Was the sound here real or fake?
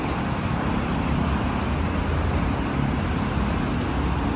real